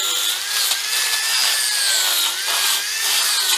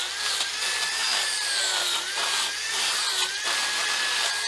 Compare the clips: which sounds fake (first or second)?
second